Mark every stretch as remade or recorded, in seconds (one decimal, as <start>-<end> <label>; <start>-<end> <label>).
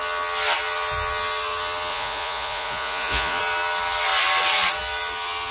0.0-1.9 recorded; 1.9-3.4 remade; 3.4-5.5 recorded